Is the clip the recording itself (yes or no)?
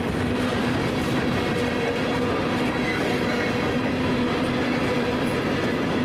yes